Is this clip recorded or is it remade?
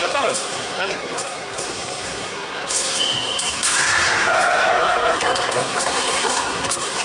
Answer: remade